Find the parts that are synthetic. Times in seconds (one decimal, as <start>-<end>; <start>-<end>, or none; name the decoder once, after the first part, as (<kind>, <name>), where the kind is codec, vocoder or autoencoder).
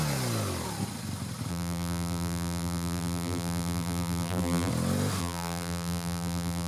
1.5-4.7 (vocoder, BigVGAN v2); 5.2-6.7